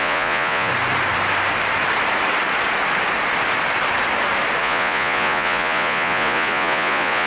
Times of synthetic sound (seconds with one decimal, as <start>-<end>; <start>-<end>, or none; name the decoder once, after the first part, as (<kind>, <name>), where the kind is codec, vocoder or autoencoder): 0.0-0.7 (vocoder, Vocos); 4.6-7.3